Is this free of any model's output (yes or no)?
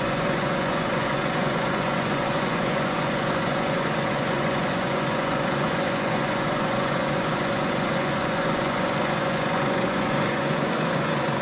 no